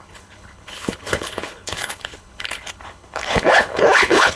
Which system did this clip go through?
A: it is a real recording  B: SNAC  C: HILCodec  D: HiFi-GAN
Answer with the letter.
C